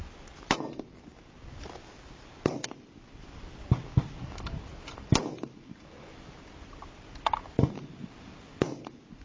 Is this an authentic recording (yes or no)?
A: yes